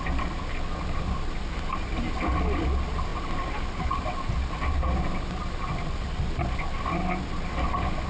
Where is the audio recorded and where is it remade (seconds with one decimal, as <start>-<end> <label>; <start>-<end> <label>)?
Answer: 0.0-8.1 recorded